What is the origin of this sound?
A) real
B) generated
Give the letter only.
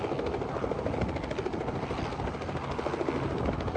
A